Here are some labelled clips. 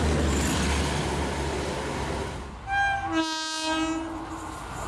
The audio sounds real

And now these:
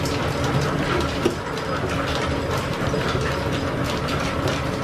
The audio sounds real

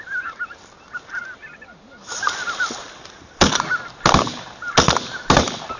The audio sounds real